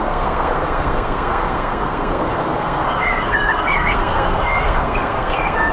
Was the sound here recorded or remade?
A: remade